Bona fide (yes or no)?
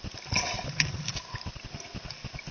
yes